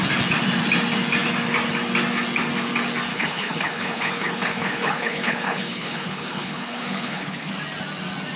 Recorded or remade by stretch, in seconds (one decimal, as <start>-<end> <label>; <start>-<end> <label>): 0.0-3.1 recorded; 3.1-7.5 remade; 7.5-8.4 recorded